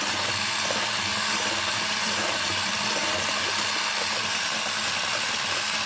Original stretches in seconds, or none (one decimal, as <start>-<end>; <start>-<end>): 0.0-5.9